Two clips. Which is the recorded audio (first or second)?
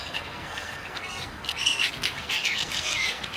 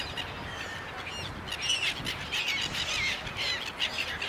second